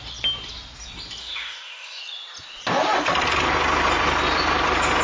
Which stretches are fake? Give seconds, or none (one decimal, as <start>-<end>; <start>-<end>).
1.2-2.0